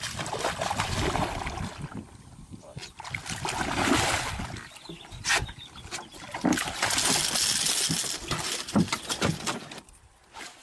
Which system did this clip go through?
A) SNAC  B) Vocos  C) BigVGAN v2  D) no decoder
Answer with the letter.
D